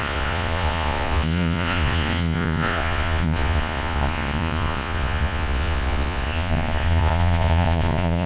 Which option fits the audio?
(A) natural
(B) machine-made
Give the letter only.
B